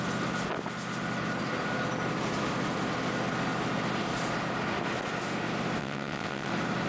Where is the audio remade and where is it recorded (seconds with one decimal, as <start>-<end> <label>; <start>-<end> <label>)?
0.0-5.8 recorded; 5.8-6.5 remade; 6.5-6.9 recorded